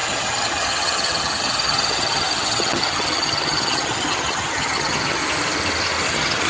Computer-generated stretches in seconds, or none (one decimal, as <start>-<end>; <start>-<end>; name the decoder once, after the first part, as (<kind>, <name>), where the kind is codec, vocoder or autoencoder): 0.0-5.2 (vocoder, HiFi-GAN); 6.1-6.5